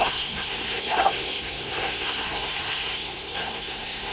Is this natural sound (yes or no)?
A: no